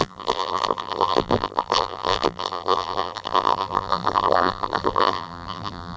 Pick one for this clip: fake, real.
fake